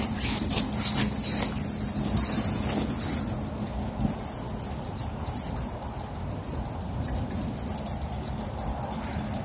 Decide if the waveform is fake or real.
real